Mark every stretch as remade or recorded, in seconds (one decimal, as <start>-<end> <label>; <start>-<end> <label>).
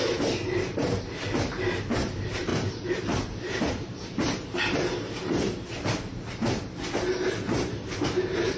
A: 0.0-8.6 remade